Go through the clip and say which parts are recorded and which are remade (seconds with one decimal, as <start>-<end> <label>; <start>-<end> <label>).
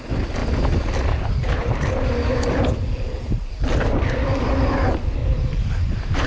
0.0-5.2 recorded; 5.2-6.3 remade